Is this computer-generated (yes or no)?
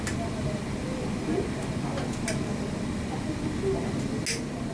no